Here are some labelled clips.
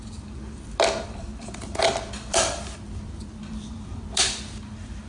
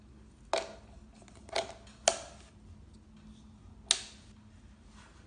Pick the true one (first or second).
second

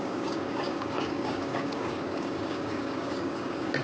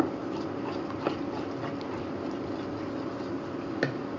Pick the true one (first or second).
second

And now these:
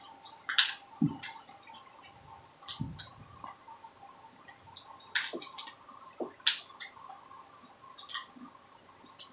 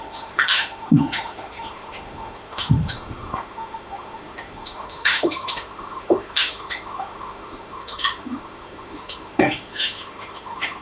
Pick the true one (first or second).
first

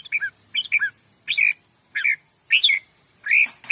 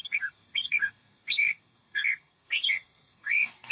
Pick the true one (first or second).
first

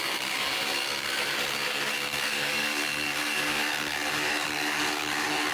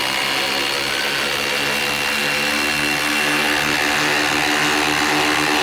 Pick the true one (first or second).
second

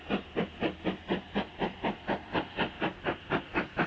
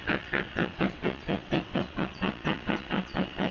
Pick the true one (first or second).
first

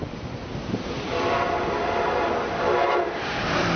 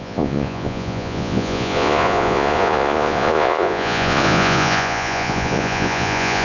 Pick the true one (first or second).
first